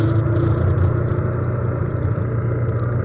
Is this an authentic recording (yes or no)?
yes